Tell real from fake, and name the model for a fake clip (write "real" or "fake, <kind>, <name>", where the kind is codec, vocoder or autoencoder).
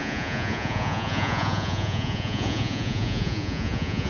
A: fake, vocoder, Vocos